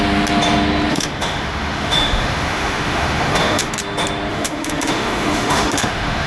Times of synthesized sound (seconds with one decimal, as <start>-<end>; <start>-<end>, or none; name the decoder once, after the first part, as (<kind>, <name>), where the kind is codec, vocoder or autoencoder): 0.9-3.7 (autoencoder, DAC-VAE); 4.3-6.3